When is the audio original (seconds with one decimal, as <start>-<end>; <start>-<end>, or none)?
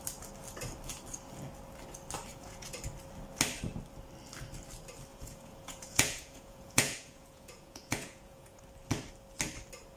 0.0-2.3; 2.8-5.1; 8.6-10.0